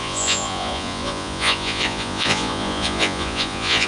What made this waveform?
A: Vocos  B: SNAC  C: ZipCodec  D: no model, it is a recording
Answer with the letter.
A